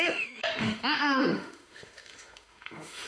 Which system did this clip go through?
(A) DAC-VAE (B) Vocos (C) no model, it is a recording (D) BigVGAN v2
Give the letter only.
A